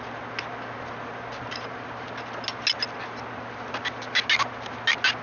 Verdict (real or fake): real